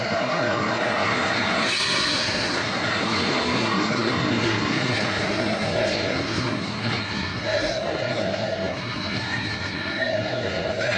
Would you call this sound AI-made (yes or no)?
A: yes